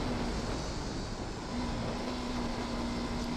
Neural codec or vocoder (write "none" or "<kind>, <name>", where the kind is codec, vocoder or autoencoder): none